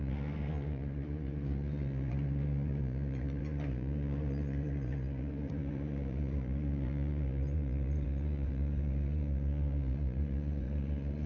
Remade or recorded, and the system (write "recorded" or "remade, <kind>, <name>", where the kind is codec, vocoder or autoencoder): remade, vocoder, Vocos